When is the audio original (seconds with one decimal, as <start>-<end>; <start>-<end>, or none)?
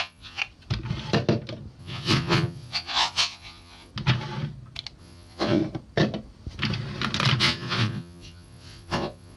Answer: 0.4-1.8; 3.9-5.0; 5.6-7.4